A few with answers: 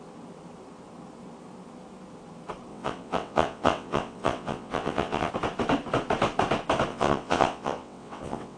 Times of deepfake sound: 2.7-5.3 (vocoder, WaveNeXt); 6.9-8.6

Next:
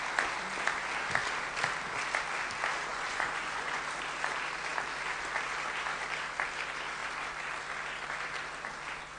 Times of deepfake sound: 2.9-3.8 (vocoder, Vocos)